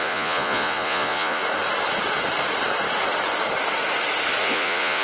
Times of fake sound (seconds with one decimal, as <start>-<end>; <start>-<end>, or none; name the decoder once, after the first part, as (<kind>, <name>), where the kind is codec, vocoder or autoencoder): 0.0-1.4 (vocoder, Vocos); 4.4-5.0